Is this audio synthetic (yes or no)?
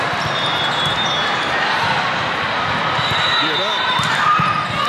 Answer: no